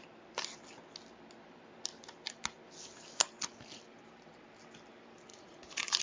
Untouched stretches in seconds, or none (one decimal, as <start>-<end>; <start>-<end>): 0.0-5.3